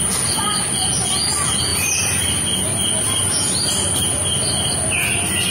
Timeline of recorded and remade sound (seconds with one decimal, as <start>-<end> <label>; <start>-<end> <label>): 0.0-1.7 recorded; 1.7-5.0 remade; 5.0-5.5 recorded

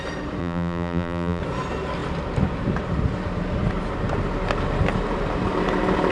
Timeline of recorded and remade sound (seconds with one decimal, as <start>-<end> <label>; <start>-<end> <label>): 0.0-0.4 recorded; 0.4-1.4 remade; 1.4-6.1 recorded

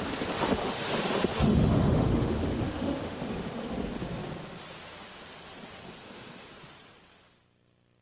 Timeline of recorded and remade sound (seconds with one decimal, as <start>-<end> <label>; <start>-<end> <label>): 0.0-0.6 recorded; 0.6-3.7 remade; 3.7-6.0 recorded; 6.0-6.5 remade; 6.5-8.0 recorded

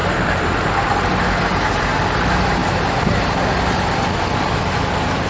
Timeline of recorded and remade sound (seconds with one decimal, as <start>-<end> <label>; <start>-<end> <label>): 0.0-1.1 remade; 1.1-2.6 recorded; 2.6-3.4 remade; 3.4-5.3 recorded

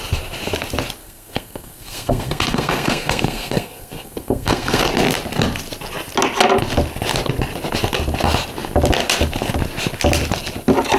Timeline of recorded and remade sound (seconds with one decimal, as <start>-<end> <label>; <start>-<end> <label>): 0.0-1.0 recorded; 1.0-4.8 remade; 4.8-11.0 recorded